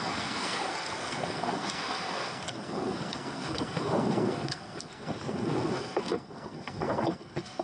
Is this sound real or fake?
fake